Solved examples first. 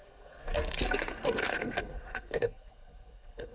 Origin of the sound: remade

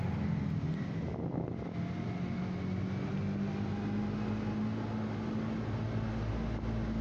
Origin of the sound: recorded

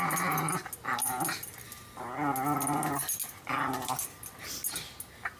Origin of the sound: recorded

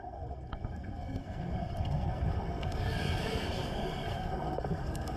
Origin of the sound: remade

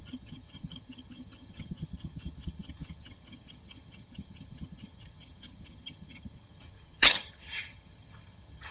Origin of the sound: remade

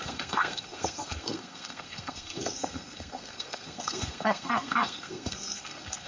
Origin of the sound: remade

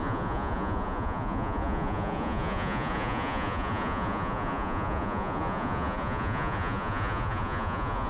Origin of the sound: remade